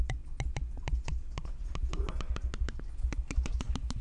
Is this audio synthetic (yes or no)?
no